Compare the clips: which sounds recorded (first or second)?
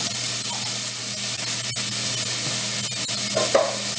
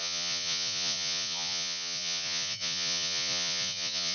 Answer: first